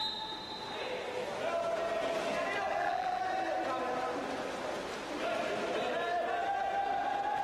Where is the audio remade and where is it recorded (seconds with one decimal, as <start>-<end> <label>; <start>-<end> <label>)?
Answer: 0.0-2.7 recorded; 2.7-3.2 remade; 3.2-7.4 recorded